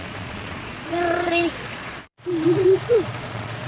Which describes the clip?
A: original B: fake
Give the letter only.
B